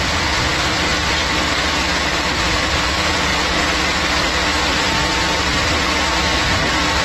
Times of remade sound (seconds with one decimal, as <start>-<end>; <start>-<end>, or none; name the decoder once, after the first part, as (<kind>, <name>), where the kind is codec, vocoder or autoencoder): 0.0-0.5 (vocoder, Vocos); 2.9-3.3